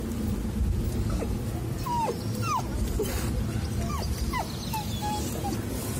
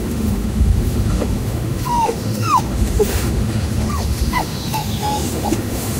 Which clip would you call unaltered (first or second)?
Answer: first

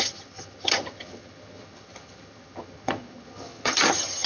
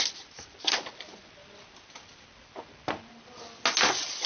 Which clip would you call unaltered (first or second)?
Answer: second